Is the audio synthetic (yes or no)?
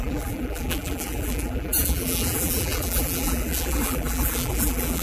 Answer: yes